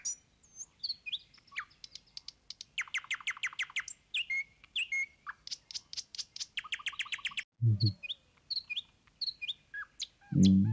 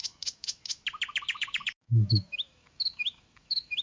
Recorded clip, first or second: first